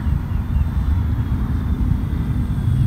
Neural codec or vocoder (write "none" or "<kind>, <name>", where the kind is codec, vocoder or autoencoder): vocoder, BigVGAN v2